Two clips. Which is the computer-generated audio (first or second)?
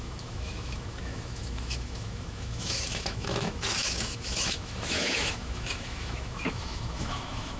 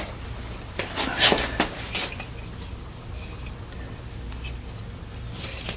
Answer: first